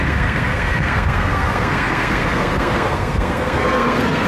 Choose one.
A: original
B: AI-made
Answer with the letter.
B